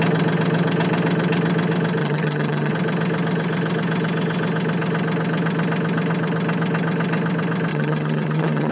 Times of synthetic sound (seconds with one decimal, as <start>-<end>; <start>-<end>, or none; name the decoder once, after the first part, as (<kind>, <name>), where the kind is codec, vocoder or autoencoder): 2.0-2.7 (vocoder, HiFi-GAN); 7.7-8.7